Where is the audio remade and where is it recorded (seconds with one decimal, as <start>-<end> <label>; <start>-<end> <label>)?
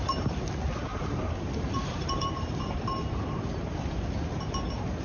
0.0-0.9 recorded; 0.9-3.9 remade; 3.9-5.0 recorded